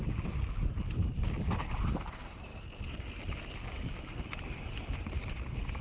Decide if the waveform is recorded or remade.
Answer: recorded